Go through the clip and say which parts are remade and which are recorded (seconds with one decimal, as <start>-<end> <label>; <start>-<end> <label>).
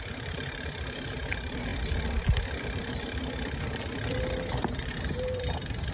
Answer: 0.0-5.9 remade